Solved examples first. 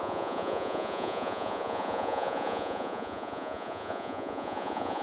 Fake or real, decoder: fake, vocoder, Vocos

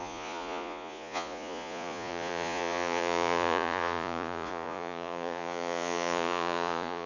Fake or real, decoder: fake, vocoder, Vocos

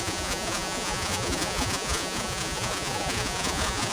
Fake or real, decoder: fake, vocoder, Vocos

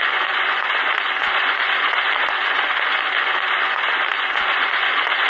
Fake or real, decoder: fake, vocoder, Vocos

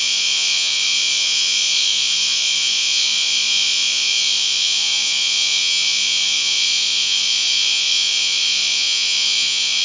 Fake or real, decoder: fake, vocoder, Vocos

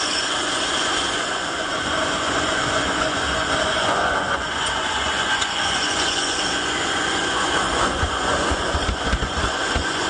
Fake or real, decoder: fake, vocoder, Vocos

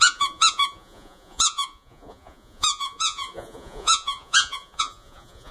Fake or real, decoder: fake, vocoder, Vocos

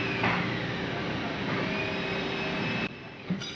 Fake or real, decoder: real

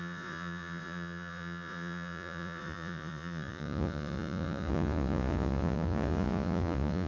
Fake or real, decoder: fake, vocoder, Vocos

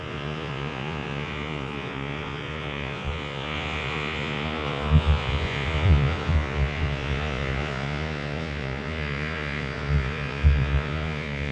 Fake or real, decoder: fake, vocoder, Vocos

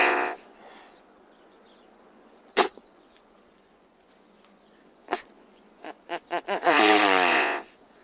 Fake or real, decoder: fake, vocoder, Vocos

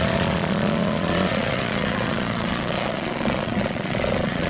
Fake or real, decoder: fake, vocoder, Vocos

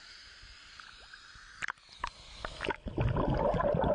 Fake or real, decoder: real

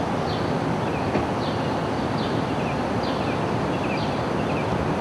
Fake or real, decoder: real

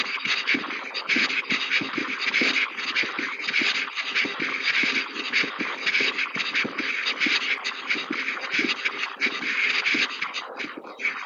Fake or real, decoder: real